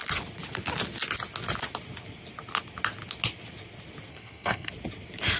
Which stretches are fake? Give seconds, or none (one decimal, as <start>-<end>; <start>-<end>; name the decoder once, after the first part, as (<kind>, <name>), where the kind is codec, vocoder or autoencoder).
4.1-4.7 (codec, SNAC)